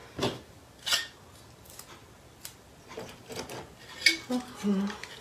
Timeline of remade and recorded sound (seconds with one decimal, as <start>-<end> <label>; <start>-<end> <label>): 0.0-5.2 recorded